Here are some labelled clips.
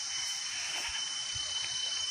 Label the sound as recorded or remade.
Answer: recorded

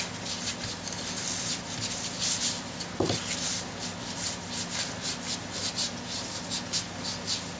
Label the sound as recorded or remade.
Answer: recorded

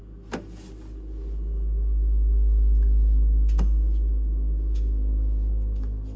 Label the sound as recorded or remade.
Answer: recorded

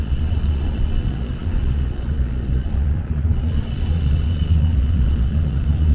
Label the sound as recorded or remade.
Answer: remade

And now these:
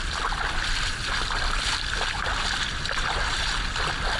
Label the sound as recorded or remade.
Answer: recorded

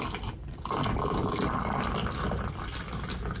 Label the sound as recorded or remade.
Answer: recorded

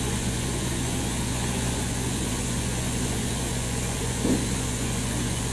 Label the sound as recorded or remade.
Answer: remade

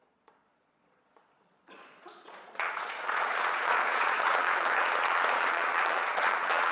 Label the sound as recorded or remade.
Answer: remade